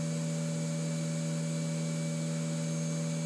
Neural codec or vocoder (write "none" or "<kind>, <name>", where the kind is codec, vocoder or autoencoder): none